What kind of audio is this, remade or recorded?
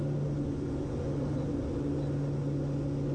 recorded